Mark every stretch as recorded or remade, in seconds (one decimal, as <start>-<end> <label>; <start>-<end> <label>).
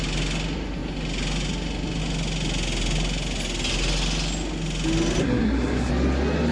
0.0-5.2 recorded; 5.2-5.9 remade; 5.9-6.5 recorded